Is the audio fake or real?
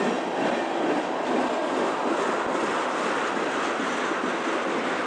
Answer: real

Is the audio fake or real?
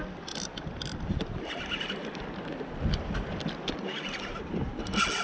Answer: real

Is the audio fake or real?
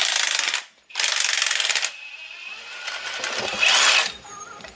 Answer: real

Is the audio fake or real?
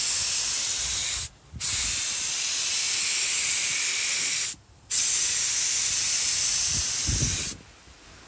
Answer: real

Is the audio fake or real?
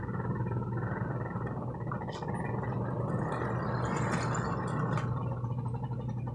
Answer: real